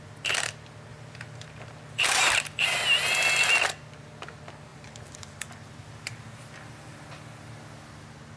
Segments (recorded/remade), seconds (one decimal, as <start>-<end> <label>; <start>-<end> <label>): 0.0-0.9 recorded; 0.9-2.8 remade; 2.8-4.7 recorded; 4.7-7.0 remade; 7.0-8.4 recorded